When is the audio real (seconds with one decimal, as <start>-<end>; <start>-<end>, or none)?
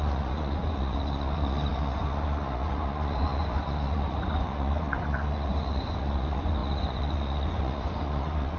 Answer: none